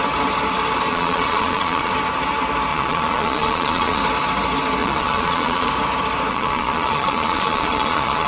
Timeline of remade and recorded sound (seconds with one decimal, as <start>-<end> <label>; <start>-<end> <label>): 0.0-0.9 recorded; 0.9-1.9 remade; 1.9-2.7 recorded; 2.7-4.0 remade; 4.0-4.8 recorded; 4.8-5.7 remade; 5.7-6.3 recorded; 6.3-8.3 remade